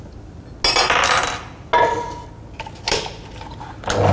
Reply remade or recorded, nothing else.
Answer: recorded